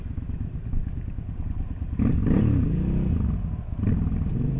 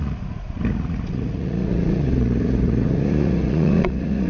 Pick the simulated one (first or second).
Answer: second